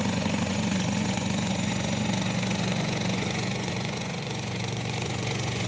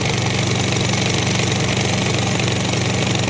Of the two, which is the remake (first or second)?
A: first